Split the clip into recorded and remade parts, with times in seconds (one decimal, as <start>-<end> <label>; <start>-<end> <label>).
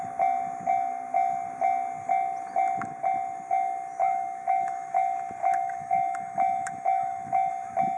0.0-3.9 recorded; 3.9-5.0 remade; 5.0-5.4 recorded; 5.4-7.5 remade; 7.5-8.0 recorded